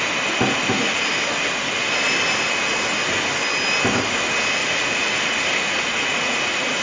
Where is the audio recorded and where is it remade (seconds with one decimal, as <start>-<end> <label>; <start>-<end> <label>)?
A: 0.0-4.6 recorded; 4.6-5.1 remade; 5.1-5.9 recorded; 5.9-6.8 remade